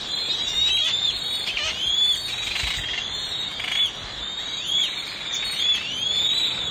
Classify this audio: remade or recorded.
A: remade